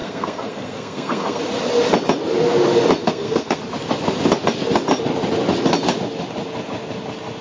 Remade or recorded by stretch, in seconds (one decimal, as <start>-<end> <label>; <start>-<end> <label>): 0.0-1.4 remade; 1.4-3.0 recorded; 3.0-3.6 remade; 3.6-7.4 recorded